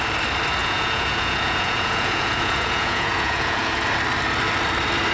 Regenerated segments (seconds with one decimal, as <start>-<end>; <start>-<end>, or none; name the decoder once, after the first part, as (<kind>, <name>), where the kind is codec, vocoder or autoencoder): 0.6-3.7 (vocoder, Vocos)